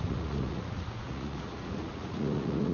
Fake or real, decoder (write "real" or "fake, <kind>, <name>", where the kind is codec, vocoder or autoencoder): fake, vocoder, Vocos